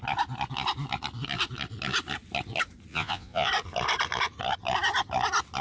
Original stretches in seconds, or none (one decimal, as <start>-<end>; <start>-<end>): 0.0-2.9; 3.5-5.6